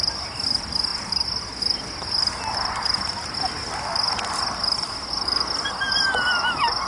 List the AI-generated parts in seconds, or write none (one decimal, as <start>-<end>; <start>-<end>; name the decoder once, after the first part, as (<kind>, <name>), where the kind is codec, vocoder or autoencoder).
none